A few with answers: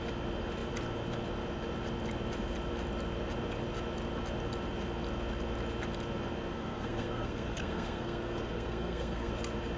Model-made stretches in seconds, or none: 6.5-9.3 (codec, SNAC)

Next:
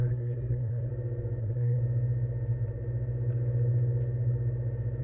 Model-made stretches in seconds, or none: 0.0-0.9 (codec, SNAC); 1.4-1.8

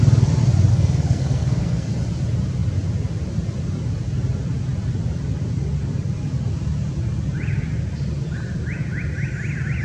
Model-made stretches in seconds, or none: 0.7-1.9 (codec, SNAC)

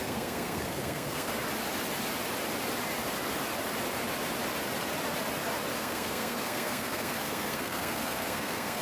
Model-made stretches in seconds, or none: 0.0-1.3 (codec, SNAC); 5.8-8.8

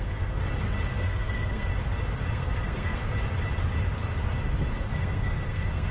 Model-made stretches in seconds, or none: 0.0-0.4 (codec, SNAC); 0.9-1.7; 2.3-3.0; 4.7-5.9